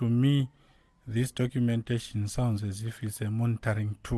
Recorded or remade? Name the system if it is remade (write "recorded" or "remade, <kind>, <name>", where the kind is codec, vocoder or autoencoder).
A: recorded